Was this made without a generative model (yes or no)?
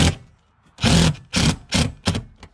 yes